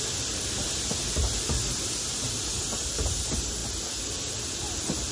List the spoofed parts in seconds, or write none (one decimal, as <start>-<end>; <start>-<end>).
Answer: none